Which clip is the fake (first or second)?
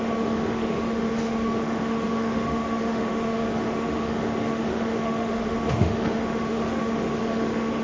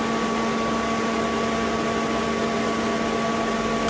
first